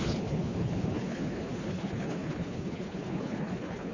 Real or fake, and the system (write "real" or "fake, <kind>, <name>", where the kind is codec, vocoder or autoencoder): fake, codec, HILCodec